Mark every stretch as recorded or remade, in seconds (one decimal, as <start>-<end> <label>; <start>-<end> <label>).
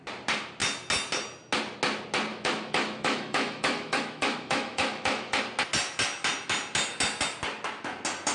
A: 0.0-2.3 recorded; 2.3-5.4 remade; 5.4-8.3 recorded